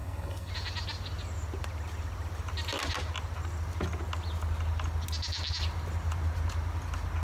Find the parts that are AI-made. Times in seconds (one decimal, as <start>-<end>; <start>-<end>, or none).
0.0-0.5